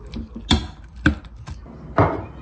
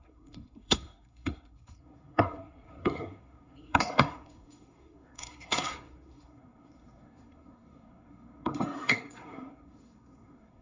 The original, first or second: first